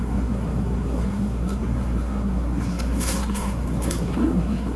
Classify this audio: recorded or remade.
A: remade